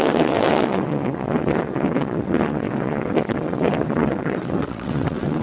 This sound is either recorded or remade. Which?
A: remade